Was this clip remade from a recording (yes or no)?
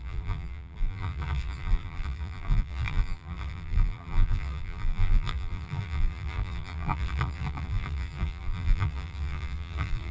yes